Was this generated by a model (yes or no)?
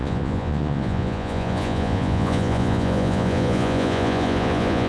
yes